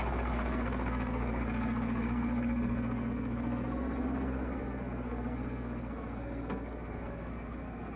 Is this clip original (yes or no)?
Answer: no